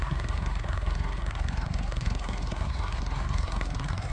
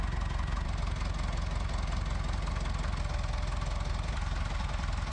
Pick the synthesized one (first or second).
first